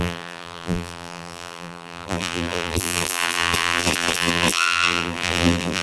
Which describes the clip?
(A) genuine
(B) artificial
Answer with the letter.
B